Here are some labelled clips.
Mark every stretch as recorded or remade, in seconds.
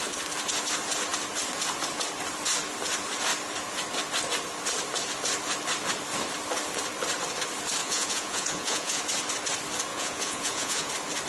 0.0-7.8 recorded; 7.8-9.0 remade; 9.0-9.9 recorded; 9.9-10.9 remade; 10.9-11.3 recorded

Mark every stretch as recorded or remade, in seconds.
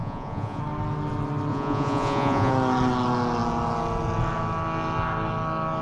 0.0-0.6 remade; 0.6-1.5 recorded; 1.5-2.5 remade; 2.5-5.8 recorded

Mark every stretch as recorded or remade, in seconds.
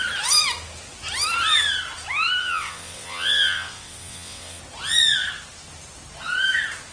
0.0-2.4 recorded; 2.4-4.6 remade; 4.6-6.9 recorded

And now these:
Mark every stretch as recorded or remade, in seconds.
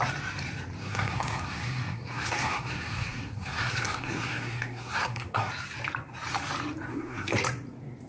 0.0-0.8 recorded; 0.8-5.5 remade; 5.5-6.9 recorded; 6.9-7.4 remade; 7.4-8.1 recorded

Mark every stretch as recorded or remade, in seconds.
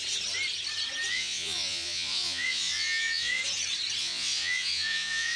0.0-1.1 recorded; 1.1-3.4 remade; 3.4-4.0 recorded; 4.0-5.4 remade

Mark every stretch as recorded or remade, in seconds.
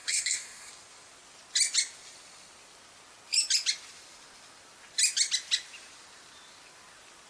0.0-0.7 remade; 0.7-7.3 recorded